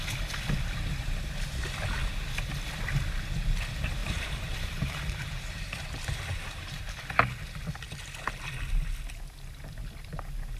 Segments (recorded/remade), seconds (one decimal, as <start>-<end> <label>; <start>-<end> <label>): 0.0-4.0 recorded; 4.0-6.9 remade; 6.9-10.6 recorded